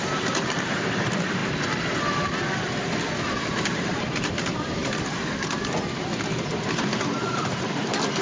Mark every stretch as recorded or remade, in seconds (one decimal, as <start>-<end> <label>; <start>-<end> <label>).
0.0-1.4 remade; 1.4-3.2 recorded; 3.2-4.8 remade; 4.8-7.6 recorded; 7.6-8.2 remade